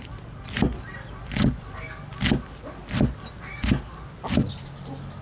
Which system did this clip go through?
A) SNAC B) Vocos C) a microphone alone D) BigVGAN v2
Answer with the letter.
C